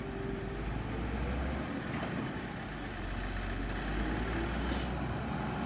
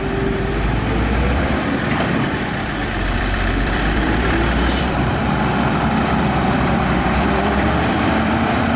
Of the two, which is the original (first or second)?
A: first